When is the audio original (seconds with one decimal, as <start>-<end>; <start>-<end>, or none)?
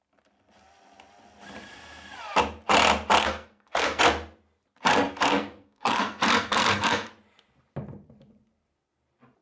0.0-3.2; 4.0-4.9; 7.1-9.4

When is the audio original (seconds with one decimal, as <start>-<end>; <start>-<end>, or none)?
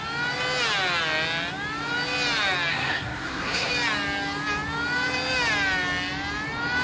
0.0-2.7; 3.7-6.8